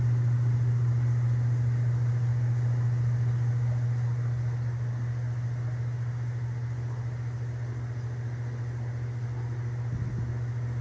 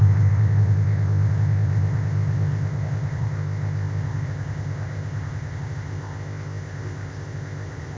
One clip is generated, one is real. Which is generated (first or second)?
second